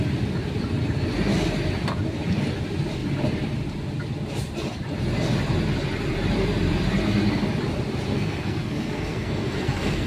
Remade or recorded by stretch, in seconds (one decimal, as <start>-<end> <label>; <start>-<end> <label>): 0.0-8.1 recorded; 8.1-10.1 remade